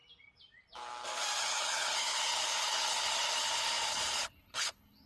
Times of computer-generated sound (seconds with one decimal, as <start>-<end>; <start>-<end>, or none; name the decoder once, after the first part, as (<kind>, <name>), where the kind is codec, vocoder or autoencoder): 1.4-5.1 (codec, HILCodec)